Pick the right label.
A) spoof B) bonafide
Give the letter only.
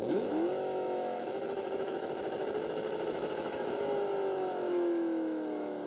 A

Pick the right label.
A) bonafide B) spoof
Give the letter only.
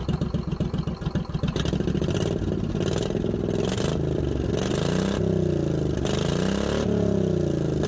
A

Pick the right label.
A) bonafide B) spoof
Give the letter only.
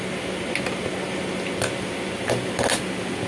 A